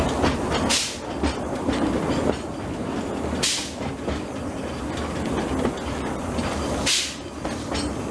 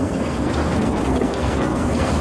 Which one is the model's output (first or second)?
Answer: second